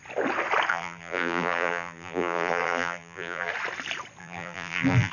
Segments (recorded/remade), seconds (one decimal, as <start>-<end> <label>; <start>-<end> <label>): 0.0-0.7 recorded; 0.7-3.5 remade; 3.5-4.2 recorded; 4.2-5.1 remade